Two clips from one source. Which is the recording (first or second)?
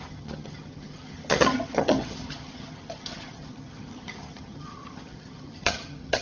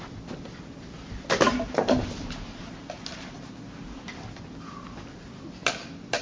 second